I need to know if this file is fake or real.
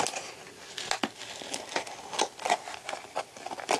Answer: real